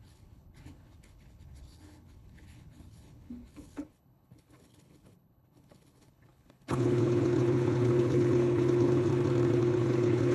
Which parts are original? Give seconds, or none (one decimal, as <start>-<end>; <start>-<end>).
9.1-9.6